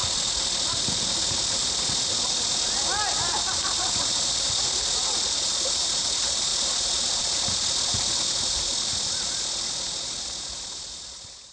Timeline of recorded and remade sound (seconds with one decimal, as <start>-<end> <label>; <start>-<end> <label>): 0.0-11.5 recorded